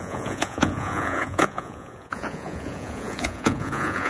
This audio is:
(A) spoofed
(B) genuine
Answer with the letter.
A